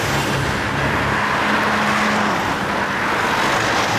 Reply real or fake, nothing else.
real